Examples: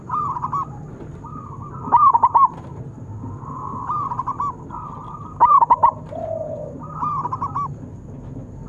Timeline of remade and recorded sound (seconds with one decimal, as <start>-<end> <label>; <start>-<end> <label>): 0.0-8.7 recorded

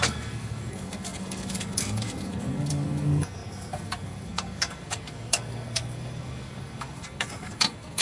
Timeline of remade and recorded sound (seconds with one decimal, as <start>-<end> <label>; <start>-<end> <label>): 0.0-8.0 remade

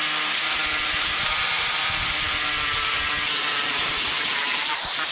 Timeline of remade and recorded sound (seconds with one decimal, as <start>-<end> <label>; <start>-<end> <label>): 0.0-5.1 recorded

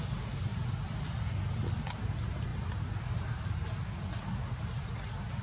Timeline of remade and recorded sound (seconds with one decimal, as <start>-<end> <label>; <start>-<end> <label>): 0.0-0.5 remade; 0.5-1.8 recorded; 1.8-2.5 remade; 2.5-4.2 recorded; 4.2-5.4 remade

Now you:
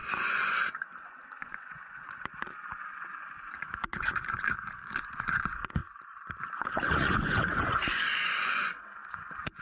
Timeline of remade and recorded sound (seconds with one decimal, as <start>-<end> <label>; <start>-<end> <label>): 0.0-5.8 remade; 5.8-6.4 recorded; 6.4-9.6 remade

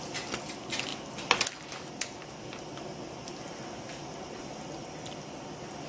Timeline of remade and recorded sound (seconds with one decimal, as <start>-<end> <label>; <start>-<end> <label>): 0.0-5.9 recorded

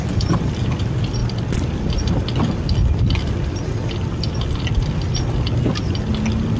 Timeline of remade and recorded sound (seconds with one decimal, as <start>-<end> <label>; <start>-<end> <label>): 0.0-6.6 recorded